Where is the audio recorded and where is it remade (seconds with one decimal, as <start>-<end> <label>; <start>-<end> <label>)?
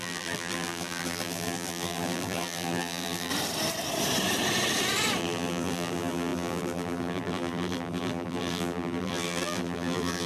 0.0-3.3 remade; 3.3-5.2 recorded; 5.2-10.3 remade